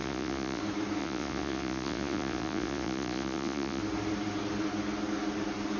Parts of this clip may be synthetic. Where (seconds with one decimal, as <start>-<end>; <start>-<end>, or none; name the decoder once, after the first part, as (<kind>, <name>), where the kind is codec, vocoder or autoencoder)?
0.0-0.6 (vocoder, Vocos); 1.0-3.8